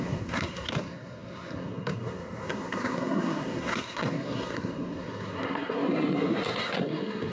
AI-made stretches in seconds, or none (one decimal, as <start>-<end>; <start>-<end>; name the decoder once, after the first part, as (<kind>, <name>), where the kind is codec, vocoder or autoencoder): 0.0-7.3 (codec, SNAC)